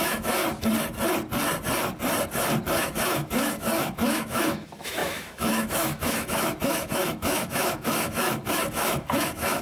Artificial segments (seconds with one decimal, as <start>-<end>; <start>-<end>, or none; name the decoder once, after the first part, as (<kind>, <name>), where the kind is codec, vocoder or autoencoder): 0.0-0.4 (autoencoder, DAC-VAE); 2.8-9.6